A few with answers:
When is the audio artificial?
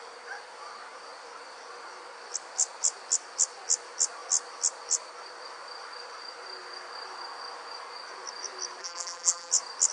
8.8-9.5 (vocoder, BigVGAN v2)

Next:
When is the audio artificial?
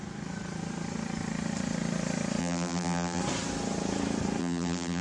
2.4-3.2 (vocoder, BigVGAN v2); 4.4-5.0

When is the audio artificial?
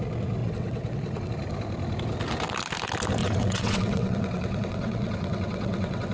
0.4-1.3 (vocoder, WaveNeXt); 3.2-6.1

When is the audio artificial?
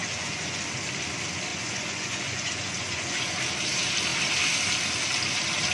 0.0-0.6 (vocoder, Vocos); 1.5-3.4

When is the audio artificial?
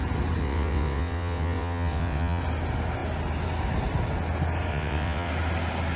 0.4-2.4 (vocoder, WaveNeXt); 4.7-5.3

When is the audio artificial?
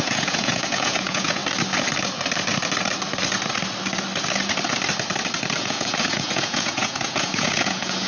0.0-1.4 (vocoder, Vocos); 5.6-8.1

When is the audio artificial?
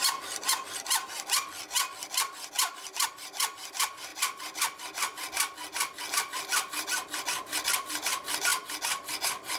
none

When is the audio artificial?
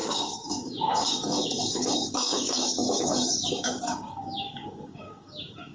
0.0-5.7 (codec, DAC)